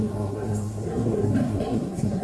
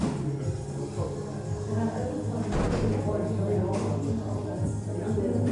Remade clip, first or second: first